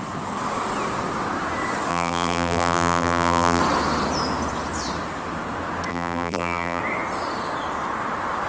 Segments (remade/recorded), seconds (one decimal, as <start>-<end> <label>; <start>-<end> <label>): 0.0-1.9 recorded; 1.9-3.6 remade; 3.6-5.9 recorded; 5.9-6.8 remade; 6.8-8.5 recorded